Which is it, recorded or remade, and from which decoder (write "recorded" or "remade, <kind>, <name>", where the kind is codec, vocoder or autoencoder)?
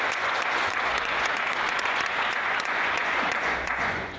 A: remade, vocoder, Vocos